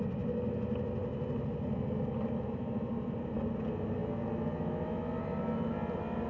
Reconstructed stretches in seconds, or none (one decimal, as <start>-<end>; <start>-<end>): none